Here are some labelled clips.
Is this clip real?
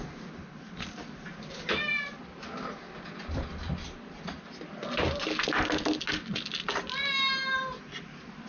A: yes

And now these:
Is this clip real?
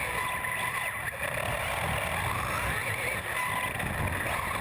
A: yes